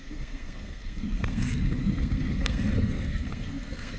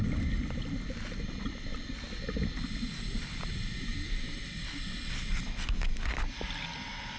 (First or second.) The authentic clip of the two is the second